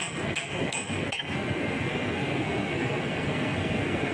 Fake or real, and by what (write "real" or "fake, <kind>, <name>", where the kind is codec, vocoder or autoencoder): fake, codec, SNAC